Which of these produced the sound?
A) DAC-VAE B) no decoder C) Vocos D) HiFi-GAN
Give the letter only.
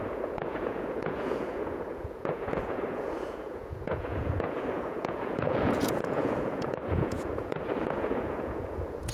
C